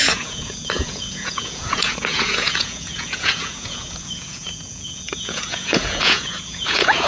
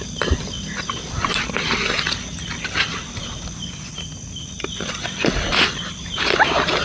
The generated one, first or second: first